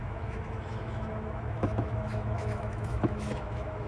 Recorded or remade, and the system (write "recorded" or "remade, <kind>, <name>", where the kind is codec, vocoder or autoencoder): remade, autoencoder, DAC-VAE